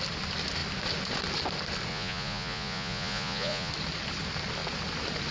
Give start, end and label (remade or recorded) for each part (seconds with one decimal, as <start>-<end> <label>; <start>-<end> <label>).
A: 0.0-1.9 recorded; 1.9-3.7 remade; 3.7-5.3 recorded